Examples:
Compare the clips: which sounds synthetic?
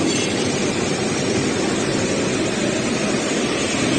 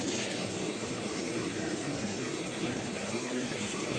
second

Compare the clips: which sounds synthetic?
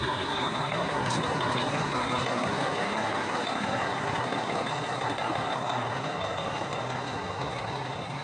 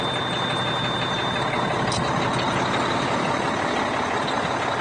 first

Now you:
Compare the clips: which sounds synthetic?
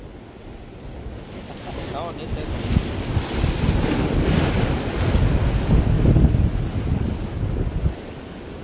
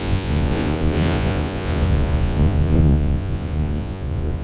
second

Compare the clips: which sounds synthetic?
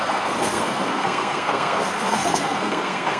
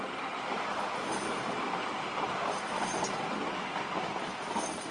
first